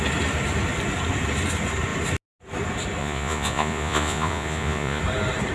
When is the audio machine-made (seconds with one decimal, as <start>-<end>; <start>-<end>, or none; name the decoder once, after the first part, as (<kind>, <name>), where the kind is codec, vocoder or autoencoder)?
3.0-5.0 (vocoder, Vocos)

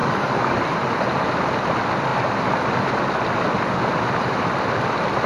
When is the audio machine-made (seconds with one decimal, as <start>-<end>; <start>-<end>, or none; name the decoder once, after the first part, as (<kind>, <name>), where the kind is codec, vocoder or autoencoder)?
0.0-0.6 (codec, DAC)

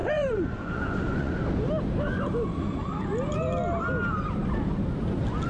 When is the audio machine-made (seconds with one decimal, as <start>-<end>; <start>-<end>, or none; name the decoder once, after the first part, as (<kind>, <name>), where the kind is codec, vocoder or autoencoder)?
0.0-1.3 (vocoder, Vocos)

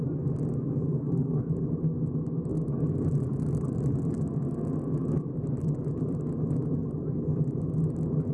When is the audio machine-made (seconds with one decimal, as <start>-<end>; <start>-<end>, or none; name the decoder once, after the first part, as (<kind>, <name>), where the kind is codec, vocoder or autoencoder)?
0.9-1.4 (codec, SNAC)